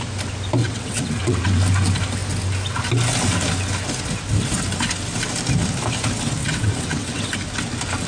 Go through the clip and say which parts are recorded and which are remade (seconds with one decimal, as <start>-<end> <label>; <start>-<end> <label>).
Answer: 0.0-0.6 recorded; 0.6-1.6 remade; 1.6-6.4 recorded; 6.4-7.3 remade; 7.3-8.1 recorded